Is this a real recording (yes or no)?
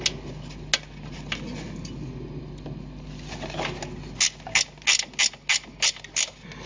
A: yes